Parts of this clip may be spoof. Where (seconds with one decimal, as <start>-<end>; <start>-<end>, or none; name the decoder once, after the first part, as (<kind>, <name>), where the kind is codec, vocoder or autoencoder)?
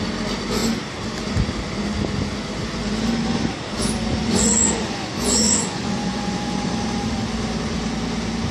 4.2-6.7 (vocoder, Vocos)